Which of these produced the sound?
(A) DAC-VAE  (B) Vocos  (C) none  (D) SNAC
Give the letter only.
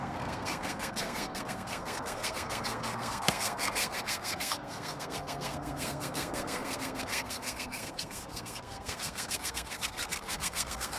D